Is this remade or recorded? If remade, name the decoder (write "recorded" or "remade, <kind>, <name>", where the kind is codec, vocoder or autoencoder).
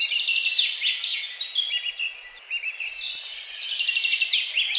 recorded